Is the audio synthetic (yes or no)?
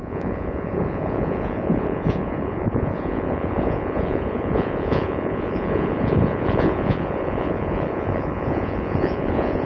yes